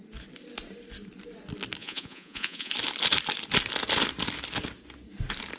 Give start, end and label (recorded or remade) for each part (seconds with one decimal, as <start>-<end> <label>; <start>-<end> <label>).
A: 0.0-1.8 recorded; 1.8-2.7 remade; 2.7-5.6 recorded